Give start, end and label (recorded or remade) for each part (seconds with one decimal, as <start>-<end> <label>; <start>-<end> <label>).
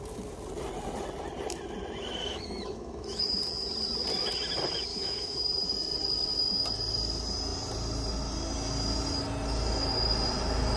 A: 0.0-2.2 recorded; 2.2-3.2 remade; 3.2-4.9 recorded; 4.9-5.4 remade; 5.4-10.8 recorded